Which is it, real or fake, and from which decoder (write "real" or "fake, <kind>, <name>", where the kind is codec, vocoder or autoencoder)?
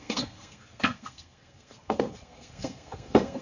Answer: fake, codec, SNAC